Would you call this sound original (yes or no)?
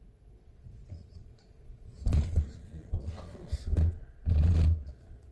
no